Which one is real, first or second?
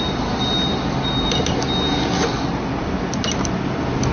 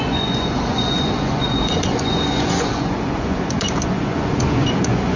first